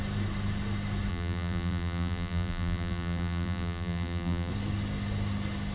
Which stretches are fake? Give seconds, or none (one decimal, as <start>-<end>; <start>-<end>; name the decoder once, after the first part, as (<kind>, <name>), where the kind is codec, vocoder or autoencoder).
1.1-4.5 (vocoder, BigVGAN v2)